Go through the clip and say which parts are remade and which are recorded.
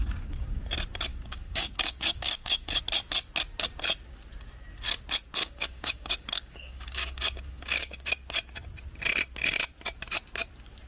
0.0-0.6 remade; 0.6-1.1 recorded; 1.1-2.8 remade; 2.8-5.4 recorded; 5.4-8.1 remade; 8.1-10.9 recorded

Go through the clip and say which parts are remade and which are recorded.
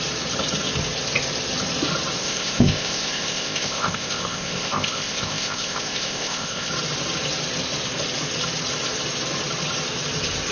0.0-2.2 recorded; 2.2-6.7 remade; 6.7-10.5 recorded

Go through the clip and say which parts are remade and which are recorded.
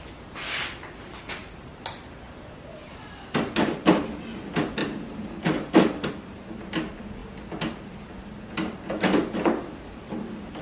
0.0-2.8 recorded; 2.8-4.0 remade; 4.0-4.8 recorded; 4.8-6.1 remade; 6.1-10.6 recorded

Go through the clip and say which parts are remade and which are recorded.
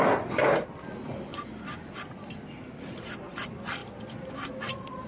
0.0-5.1 recorded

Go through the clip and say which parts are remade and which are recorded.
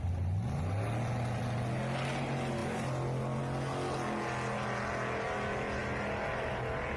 0.0-7.0 recorded